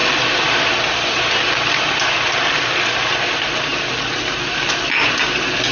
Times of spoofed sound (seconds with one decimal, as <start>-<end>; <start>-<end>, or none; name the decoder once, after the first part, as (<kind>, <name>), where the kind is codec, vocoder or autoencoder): none